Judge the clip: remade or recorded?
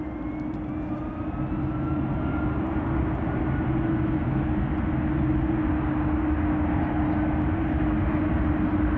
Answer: recorded